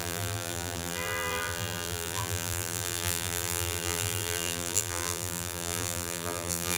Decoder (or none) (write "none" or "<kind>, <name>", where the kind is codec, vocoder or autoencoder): vocoder, BigVGAN v2